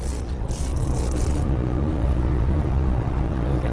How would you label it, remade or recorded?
remade